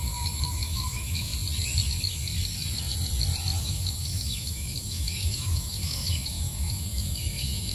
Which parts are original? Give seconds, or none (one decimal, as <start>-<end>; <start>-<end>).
1.3-3.6